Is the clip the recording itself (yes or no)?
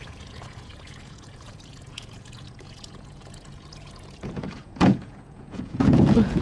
no